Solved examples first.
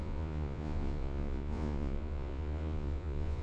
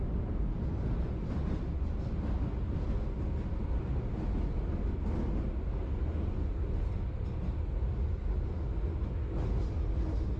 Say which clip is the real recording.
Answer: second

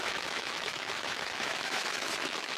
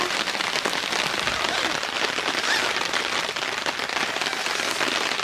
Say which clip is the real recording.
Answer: second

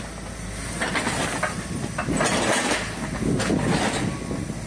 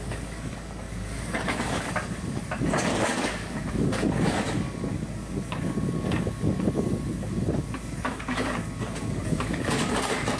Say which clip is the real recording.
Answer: first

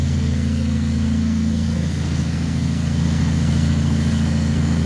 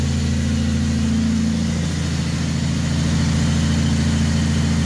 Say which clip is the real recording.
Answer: second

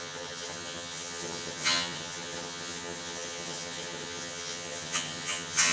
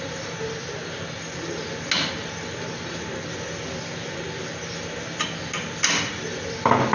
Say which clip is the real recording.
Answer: second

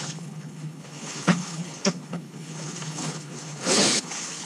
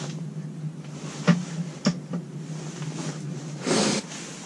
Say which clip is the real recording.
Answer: second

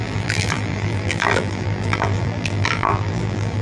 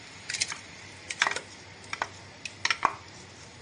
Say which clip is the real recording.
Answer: second